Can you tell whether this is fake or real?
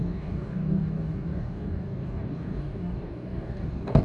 fake